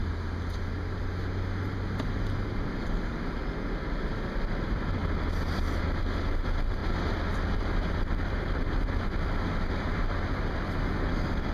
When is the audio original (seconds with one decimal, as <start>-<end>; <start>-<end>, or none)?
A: 0.0-6.8; 8.7-11.5